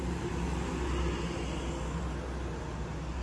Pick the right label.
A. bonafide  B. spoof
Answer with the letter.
A